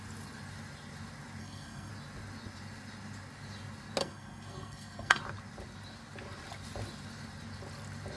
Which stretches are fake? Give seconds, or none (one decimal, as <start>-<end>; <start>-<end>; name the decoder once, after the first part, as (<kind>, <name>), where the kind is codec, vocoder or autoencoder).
1.4-1.9 (codec, SNAC); 4.0-5.2